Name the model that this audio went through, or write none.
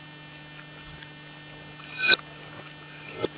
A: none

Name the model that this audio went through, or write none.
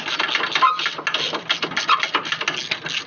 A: none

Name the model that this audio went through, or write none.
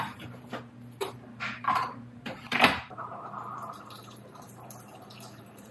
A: vocoder, BigVGAN v2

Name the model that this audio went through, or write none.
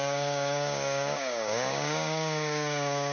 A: codec, DAC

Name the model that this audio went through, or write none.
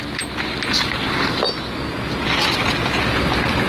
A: none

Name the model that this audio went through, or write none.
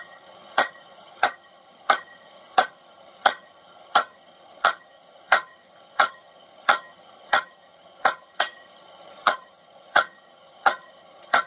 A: vocoder, HiFi-GAN